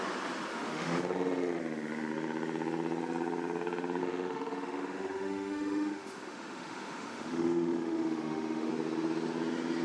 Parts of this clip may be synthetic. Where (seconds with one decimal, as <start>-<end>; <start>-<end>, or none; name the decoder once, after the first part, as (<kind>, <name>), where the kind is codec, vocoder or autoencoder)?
0.5-1.6 (autoencoder, DAC-VAE); 4.0-8.7